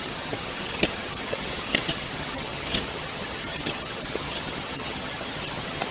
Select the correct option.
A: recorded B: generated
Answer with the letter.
B